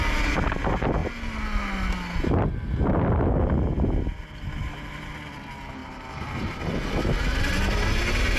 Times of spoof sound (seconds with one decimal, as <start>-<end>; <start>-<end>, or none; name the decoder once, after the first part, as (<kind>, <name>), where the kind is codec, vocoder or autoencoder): 5.8-6.5 (vocoder, BigVGAN v2)